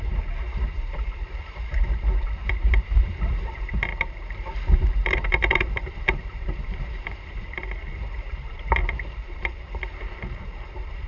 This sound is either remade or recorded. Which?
remade